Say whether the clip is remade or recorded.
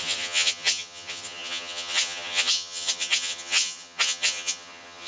remade